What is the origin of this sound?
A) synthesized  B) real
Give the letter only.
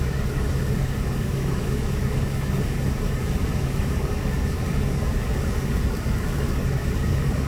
A